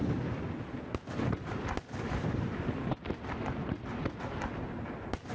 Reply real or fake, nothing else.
real